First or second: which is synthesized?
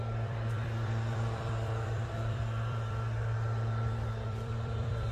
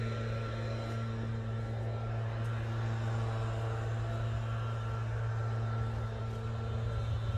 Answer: first